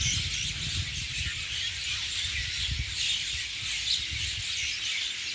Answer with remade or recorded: recorded